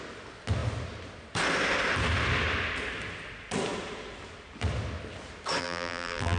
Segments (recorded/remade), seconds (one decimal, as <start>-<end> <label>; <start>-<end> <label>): 0.0-5.6 recorded; 5.6-6.4 remade